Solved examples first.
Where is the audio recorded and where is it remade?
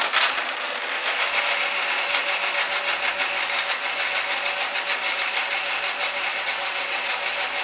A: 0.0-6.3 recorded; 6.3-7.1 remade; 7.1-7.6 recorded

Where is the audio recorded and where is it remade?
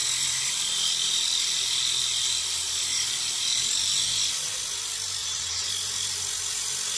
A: 0.0-5.2 recorded; 5.2-5.7 remade; 5.7-7.0 recorded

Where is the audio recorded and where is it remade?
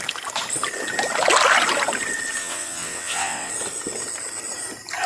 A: 0.0-2.4 recorded; 2.4-3.5 remade; 3.5-5.1 recorded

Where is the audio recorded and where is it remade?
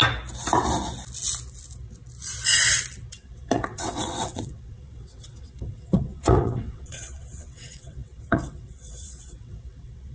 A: 0.0-3.1 recorded; 3.1-10.1 remade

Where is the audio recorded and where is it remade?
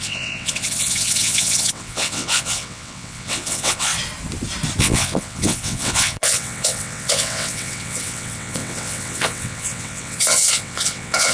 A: 0.0-3.9 remade; 3.9-4.8 recorded; 4.8-11.3 remade